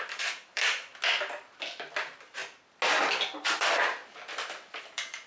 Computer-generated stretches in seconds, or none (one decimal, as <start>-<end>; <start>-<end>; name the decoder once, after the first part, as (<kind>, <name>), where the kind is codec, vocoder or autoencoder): 0.0-0.9 (vocoder, BigVGAN v2); 2.0-2.4; 3.2-4.0; 4.8-5.3

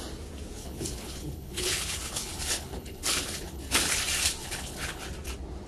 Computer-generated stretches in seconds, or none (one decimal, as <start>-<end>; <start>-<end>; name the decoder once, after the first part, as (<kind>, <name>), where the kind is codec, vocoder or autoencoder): 0.6-4.0 (codec, HILCodec); 4.4-5.0

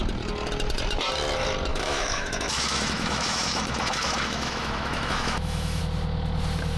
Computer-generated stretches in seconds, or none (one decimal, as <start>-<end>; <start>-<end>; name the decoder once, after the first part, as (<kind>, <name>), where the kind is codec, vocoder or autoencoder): 1.7-5.8 (autoencoder, DAC-VAE)

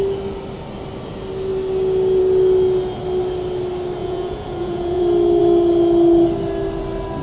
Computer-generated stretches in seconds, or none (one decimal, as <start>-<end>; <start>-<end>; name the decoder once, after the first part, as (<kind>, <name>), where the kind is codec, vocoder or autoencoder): 4.0-5.0 (vocoder, Vocos)